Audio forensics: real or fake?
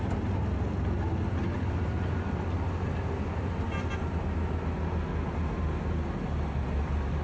real